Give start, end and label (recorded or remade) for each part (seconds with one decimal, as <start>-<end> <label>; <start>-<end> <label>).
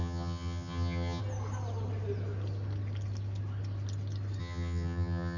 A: 0.0-1.2 remade; 1.2-4.4 recorded; 4.4-5.4 remade